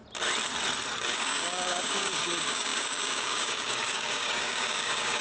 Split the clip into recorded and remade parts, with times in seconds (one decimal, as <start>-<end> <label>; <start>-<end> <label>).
0.0-1.0 recorded; 1.0-5.2 remade